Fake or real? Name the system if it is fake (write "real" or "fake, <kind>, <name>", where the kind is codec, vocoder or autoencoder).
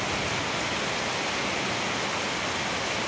real